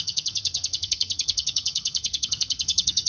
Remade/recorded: remade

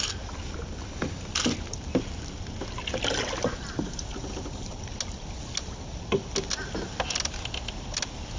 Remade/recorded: recorded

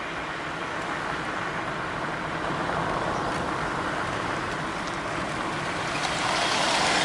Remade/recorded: recorded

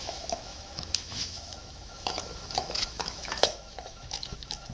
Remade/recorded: remade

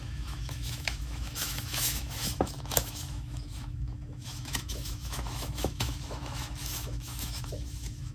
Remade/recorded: remade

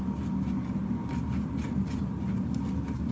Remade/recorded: recorded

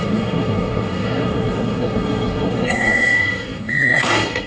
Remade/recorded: remade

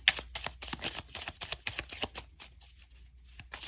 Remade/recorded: recorded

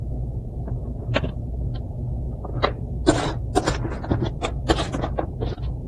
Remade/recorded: recorded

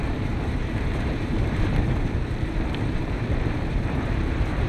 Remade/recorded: remade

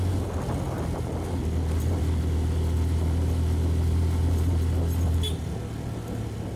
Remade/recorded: recorded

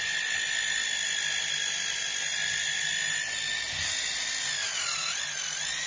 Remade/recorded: recorded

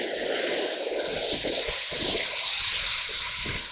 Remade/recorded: recorded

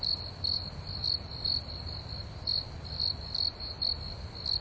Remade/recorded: recorded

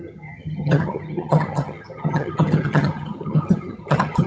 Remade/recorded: remade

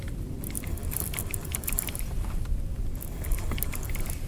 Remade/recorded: recorded